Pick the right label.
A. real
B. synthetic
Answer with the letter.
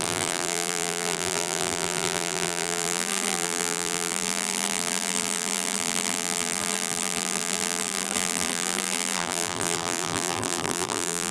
B